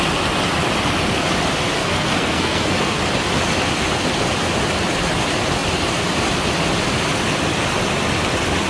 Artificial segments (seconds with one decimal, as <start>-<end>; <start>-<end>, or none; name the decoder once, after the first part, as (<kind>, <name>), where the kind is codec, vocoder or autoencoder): 1.8-3.0 (codec, SNAC)